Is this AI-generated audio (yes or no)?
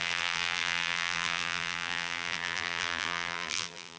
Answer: yes